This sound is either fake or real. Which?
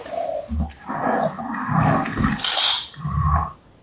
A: real